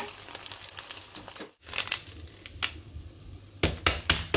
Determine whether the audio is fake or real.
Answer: real